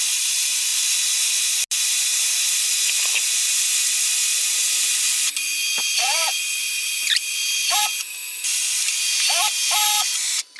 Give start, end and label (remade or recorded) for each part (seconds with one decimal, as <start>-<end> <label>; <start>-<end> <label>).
0.0-4.3 recorded; 4.3-7.8 remade; 7.8-10.6 recorded